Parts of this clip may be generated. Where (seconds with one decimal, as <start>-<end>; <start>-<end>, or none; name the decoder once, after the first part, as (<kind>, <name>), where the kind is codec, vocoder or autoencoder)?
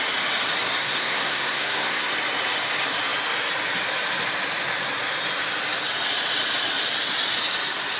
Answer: 0.8-2.1 (codec, SNAC)